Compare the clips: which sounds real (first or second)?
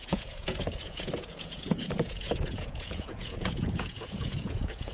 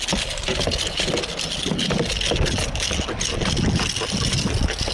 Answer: second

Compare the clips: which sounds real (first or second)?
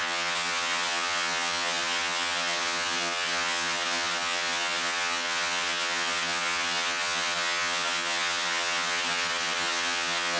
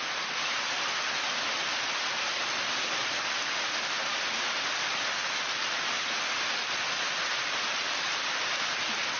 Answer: second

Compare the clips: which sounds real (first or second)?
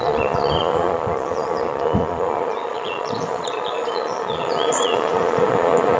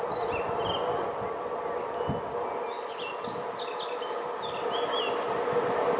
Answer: second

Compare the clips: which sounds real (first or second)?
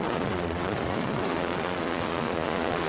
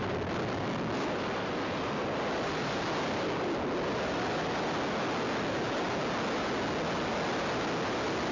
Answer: second